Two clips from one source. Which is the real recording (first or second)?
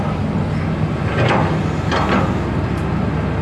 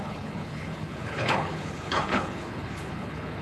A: first